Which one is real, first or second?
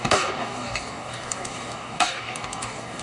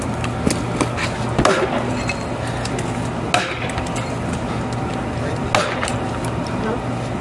second